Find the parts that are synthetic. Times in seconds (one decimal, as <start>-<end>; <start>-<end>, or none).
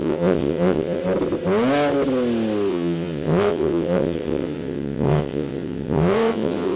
0.0-1.0; 2.7-6.8